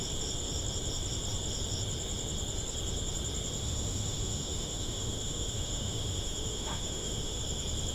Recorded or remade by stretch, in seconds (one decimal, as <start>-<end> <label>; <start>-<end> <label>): 0.0-3.6 recorded; 3.6-7.4 remade; 7.4-7.9 recorded